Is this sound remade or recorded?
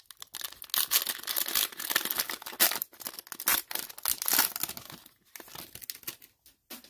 recorded